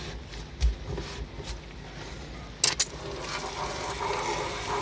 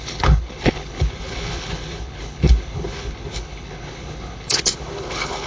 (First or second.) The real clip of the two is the first